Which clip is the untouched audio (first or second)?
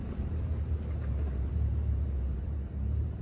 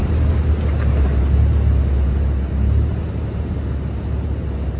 second